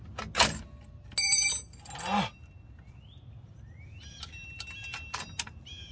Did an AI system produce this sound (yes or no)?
no